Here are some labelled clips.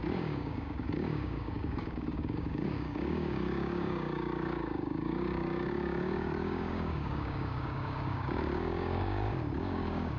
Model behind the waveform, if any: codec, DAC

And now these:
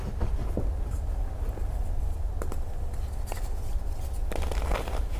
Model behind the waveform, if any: none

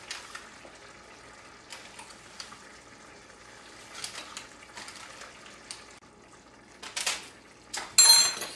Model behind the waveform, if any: none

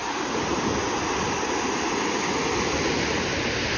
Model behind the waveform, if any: none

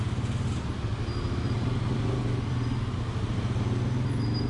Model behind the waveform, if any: none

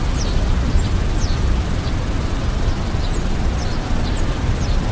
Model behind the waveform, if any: none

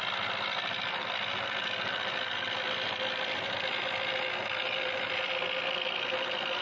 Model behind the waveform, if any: none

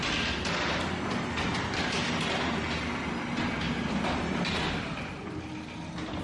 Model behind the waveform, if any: none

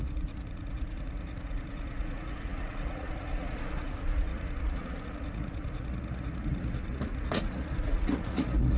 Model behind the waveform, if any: vocoder, Vocos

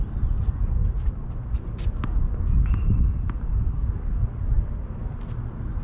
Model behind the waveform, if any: none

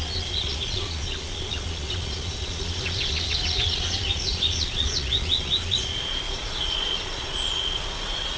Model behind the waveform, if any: vocoder, Vocos